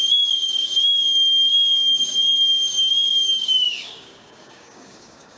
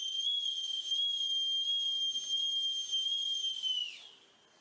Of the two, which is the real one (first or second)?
second